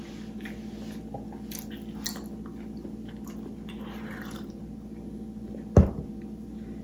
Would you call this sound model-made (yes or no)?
no